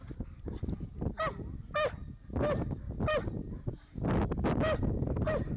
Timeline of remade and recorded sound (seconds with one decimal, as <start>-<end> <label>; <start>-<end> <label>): 0.0-5.6 recorded